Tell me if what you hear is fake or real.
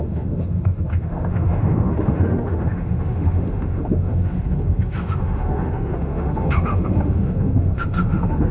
fake